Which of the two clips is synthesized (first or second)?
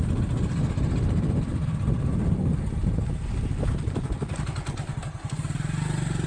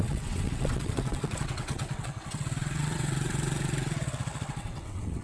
second